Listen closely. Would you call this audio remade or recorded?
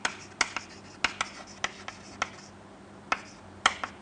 recorded